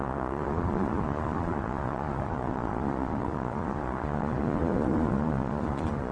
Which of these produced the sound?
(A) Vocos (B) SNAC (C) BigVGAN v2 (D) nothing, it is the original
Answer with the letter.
A